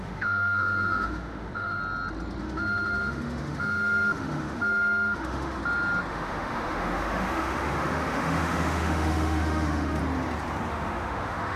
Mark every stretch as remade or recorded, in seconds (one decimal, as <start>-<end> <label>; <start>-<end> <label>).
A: 0.0-1.8 remade; 1.8-2.4 recorded; 2.4-5.6 remade; 5.6-6.1 recorded; 6.1-10.0 remade; 10.0-10.7 recorded; 10.7-11.6 remade